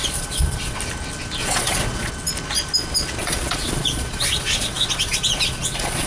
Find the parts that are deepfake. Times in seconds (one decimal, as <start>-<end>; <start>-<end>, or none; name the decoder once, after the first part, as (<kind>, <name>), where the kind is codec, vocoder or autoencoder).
0.0-0.8 (vocoder, Vocos); 1.4-2.1; 3.2-6.1